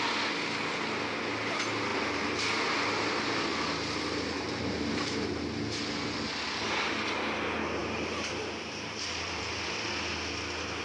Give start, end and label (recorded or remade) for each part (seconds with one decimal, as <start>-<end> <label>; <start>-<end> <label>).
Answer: 0.0-1.9 recorded; 1.9-3.0 remade; 3.0-3.5 recorded; 3.5-5.3 remade; 5.3-7.8 recorded; 7.8-9.4 remade; 9.4-10.8 recorded